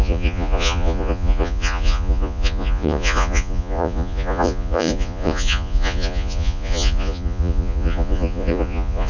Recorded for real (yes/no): no